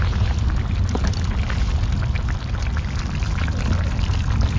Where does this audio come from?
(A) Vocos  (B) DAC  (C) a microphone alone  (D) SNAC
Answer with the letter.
C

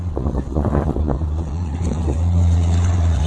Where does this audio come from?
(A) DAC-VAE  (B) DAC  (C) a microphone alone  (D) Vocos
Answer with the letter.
D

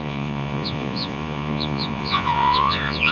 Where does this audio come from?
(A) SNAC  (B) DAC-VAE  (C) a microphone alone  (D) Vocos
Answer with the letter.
D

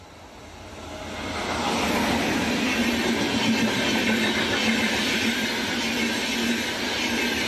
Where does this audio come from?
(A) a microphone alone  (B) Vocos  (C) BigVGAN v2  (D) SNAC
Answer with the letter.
A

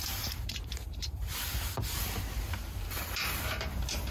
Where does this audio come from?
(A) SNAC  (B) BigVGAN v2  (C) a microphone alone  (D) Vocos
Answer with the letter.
B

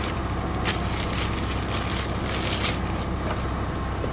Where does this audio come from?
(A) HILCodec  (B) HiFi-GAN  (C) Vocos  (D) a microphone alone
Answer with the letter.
D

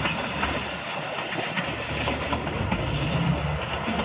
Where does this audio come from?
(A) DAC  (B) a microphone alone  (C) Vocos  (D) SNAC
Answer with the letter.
B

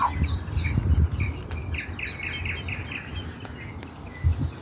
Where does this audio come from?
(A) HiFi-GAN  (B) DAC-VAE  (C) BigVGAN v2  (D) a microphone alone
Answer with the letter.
D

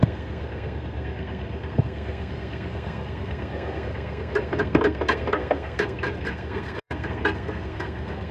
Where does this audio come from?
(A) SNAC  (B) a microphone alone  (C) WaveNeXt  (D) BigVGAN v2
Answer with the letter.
A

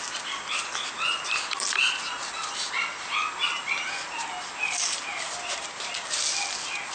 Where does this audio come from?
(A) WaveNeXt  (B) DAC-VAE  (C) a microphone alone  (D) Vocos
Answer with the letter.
C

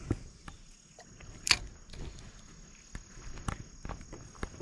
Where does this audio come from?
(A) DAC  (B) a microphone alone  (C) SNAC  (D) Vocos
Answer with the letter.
B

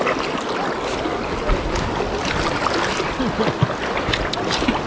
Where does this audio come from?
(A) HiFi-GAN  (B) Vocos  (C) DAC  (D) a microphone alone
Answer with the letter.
D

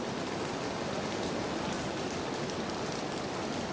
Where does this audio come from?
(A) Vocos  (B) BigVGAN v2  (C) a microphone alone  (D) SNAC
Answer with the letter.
C